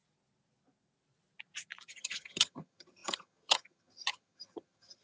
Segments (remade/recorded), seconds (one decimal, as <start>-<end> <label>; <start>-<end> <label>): 0.0-1.9 recorded; 1.9-5.0 remade